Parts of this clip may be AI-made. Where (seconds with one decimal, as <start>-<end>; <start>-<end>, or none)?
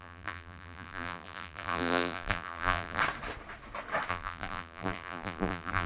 0.0-3.0; 4.1-5.9